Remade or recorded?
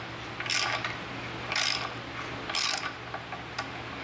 recorded